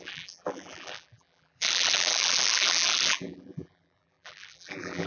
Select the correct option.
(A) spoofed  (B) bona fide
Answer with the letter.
A